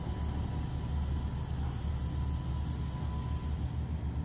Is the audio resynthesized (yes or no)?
no